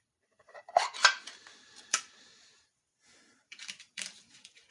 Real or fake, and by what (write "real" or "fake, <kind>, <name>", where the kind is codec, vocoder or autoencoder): fake, vocoder, BigVGAN v2